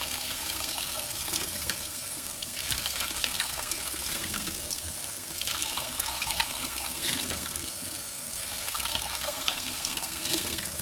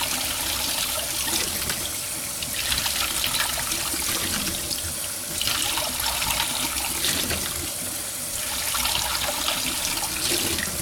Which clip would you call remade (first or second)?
first